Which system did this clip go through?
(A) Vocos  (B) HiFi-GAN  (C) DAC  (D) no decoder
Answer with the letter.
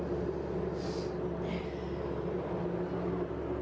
D